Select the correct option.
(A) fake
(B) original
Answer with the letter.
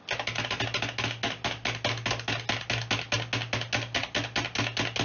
B